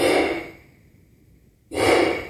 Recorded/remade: recorded